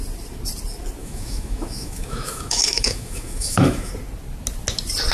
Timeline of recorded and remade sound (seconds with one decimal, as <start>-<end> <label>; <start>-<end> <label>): 0.0-1.0 recorded; 1.0-3.9 remade; 3.9-5.1 recorded